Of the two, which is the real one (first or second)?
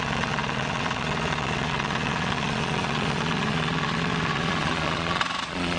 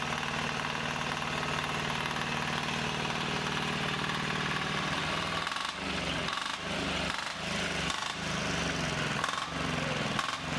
second